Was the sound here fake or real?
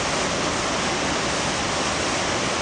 real